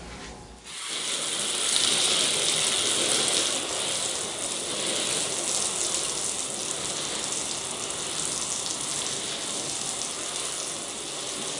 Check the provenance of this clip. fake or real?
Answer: real